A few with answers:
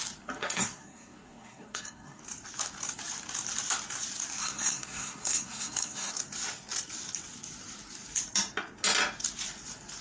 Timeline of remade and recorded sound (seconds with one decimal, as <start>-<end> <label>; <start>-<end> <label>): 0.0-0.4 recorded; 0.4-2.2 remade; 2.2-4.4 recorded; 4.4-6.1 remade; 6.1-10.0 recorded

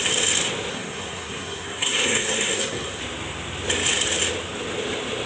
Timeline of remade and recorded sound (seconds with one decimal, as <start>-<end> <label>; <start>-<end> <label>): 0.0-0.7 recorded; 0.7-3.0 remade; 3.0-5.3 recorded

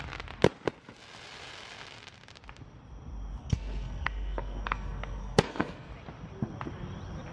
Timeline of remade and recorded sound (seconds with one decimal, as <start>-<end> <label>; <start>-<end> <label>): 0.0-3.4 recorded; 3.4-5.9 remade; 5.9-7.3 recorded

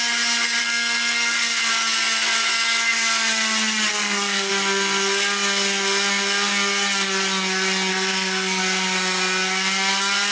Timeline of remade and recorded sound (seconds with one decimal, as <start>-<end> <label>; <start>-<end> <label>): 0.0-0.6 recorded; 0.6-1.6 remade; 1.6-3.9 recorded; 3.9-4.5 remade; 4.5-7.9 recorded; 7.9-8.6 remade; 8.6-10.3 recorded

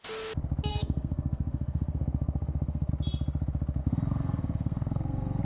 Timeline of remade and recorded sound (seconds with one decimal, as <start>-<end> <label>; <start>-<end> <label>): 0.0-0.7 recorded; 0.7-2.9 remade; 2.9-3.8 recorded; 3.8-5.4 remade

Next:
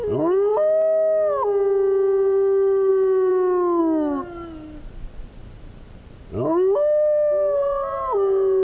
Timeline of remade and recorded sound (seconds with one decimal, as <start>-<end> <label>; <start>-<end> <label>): 0.0-8.6 recorded

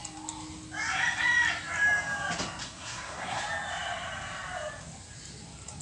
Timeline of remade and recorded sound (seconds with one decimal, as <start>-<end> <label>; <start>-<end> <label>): 0.0-2.6 recorded; 2.6-3.4 remade; 3.4-5.8 recorded

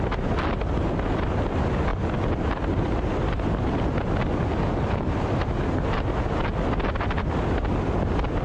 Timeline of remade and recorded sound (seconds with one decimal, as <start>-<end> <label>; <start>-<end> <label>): 0.0-8.4 recorded